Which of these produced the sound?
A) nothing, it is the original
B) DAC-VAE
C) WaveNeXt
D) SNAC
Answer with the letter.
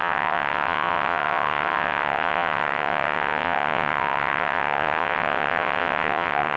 C